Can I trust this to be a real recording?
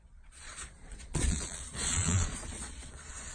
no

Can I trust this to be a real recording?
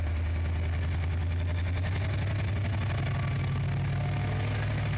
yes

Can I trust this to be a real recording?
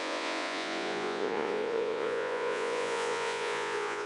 no